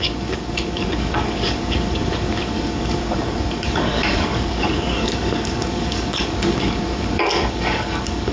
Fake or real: fake